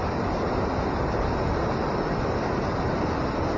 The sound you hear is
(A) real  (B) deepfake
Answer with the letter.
A